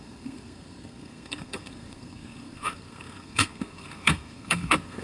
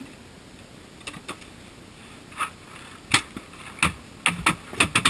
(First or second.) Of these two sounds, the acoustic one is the second